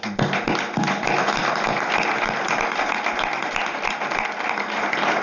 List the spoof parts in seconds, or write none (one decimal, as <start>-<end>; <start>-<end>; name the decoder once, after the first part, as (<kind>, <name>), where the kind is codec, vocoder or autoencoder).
none